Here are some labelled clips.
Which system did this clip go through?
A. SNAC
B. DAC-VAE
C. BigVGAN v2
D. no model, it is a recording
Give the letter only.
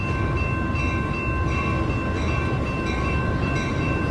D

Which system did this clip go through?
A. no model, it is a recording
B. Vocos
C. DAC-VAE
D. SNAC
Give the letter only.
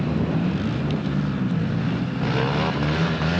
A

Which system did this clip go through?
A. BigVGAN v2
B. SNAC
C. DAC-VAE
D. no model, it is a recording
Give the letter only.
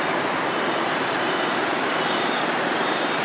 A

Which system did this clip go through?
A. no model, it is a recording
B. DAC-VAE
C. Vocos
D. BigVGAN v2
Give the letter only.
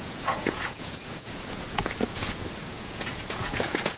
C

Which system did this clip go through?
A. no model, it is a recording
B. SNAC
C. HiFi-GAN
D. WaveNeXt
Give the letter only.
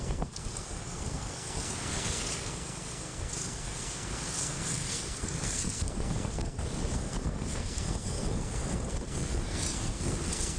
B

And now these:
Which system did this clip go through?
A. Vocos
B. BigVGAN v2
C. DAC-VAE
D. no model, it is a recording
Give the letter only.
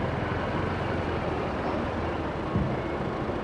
D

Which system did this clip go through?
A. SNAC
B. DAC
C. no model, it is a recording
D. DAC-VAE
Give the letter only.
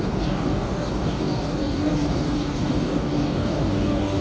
B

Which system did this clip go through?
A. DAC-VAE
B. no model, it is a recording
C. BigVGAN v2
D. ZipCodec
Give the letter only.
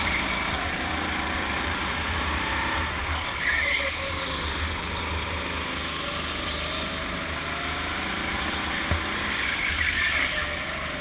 B